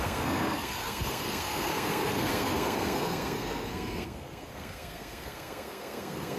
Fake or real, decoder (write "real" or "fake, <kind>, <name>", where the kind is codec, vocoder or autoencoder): fake, codec, SNAC